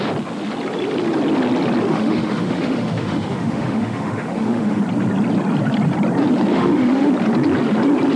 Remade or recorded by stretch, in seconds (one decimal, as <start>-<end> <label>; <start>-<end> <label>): 0.0-1.9 recorded; 1.9-4.8 remade; 4.8-6.5 recorded; 6.5-7.1 remade; 7.1-8.2 recorded